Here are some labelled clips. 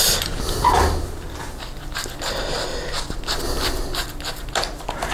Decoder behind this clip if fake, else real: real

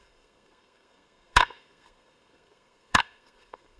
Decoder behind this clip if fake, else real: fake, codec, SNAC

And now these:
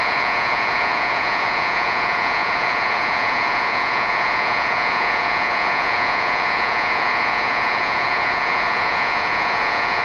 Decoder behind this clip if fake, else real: fake, vocoder, Vocos